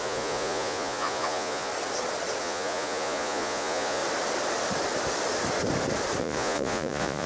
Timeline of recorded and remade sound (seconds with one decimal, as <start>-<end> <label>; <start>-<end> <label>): 0.0-1.7 remade; 1.7-2.4 recorded; 2.4-4.0 remade; 4.0-6.2 recorded; 6.2-7.3 remade